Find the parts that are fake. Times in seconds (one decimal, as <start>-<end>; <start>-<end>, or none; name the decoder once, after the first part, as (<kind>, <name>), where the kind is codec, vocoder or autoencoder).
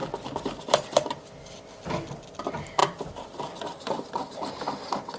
0.0-2.4 (vocoder, BigVGAN v2)